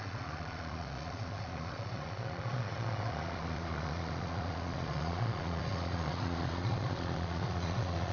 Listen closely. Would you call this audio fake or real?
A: fake